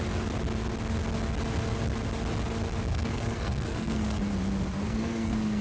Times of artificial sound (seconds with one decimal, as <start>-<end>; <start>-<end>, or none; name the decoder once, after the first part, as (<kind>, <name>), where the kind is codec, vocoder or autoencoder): 2.9-4.2 (codec, SNAC); 4.8-5.6